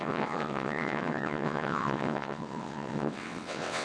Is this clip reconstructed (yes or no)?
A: yes